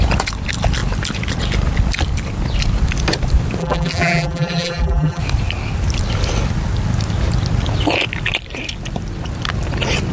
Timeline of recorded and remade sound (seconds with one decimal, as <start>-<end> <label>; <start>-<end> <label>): 0.0-3.6 recorded; 3.6-5.2 remade; 5.2-10.1 recorded